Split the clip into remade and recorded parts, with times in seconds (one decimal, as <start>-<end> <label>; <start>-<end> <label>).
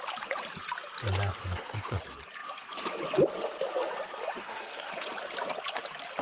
0.0-1.4 recorded; 1.4-2.0 remade; 2.0-4.4 recorded; 4.4-4.9 remade; 4.9-6.2 recorded